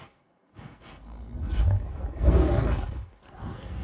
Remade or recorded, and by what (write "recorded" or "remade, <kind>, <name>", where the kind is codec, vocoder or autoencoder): remade, codec, SNAC